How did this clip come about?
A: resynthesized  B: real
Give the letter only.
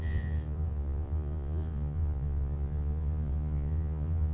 A